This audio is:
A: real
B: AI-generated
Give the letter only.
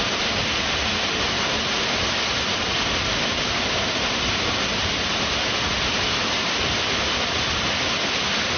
A